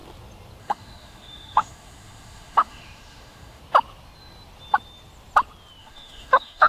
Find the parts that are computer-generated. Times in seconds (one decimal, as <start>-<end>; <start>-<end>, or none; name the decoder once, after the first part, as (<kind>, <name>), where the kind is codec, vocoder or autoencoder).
0.6-3.6 (autoencoder, DAC-VAE); 5.8-6.7